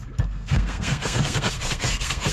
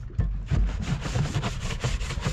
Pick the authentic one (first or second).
second